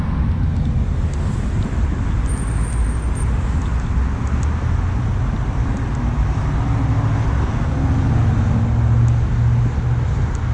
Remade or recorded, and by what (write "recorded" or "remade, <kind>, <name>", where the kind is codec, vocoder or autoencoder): recorded